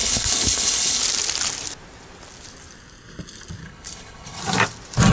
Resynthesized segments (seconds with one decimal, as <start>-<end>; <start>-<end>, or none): 0.0-1.0; 3.6-4.4